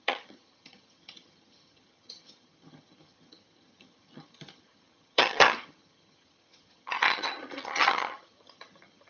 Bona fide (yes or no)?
no